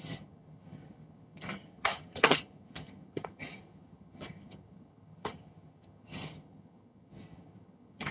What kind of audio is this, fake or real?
fake